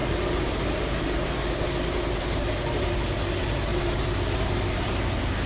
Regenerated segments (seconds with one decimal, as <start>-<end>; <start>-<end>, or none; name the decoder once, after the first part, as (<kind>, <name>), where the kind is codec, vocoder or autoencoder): none